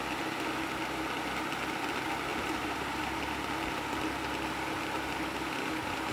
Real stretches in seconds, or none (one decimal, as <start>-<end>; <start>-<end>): 0.0-2.3; 3.0-6.1